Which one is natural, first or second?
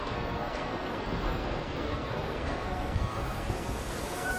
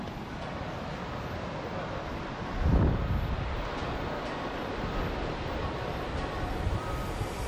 second